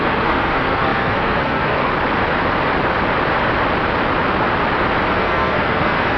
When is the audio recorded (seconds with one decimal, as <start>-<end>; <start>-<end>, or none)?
1.9-5.1